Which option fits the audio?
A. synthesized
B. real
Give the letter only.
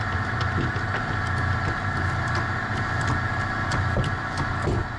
B